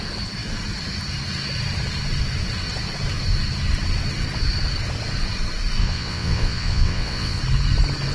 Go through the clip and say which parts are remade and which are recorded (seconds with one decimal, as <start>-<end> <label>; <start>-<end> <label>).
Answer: 0.0-5.8 recorded; 5.8-7.4 remade; 7.4-8.1 recorded